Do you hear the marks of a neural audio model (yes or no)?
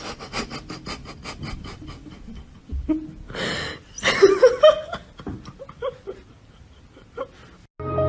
no